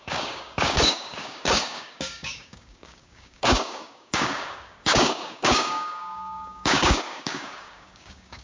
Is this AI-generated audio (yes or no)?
yes